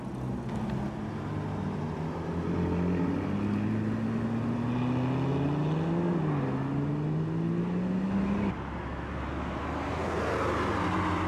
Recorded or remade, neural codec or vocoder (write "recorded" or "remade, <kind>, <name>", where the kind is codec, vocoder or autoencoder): recorded